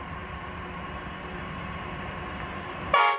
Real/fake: real